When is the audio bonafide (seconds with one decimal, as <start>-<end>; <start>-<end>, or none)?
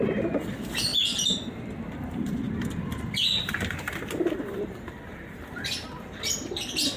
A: none